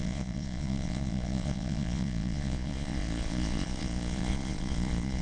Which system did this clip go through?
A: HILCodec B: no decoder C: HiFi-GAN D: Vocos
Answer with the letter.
D